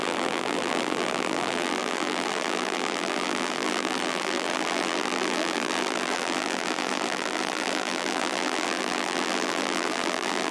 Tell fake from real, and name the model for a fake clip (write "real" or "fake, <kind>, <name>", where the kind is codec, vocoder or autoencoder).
fake, vocoder, BigVGAN v2